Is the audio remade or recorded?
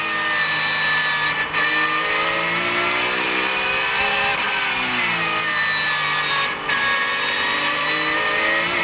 recorded